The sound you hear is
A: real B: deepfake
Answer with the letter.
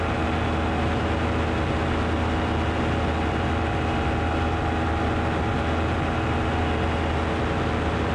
A